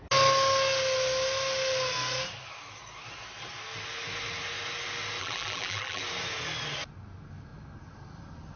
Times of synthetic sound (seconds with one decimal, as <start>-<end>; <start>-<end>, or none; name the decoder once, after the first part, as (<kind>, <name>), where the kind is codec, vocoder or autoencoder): 5.2-6.0 (vocoder, BigVGAN v2)